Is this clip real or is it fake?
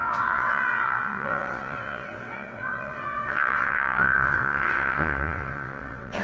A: fake